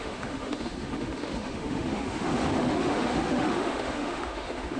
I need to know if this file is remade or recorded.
remade